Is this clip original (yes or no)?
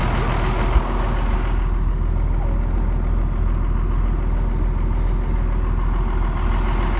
yes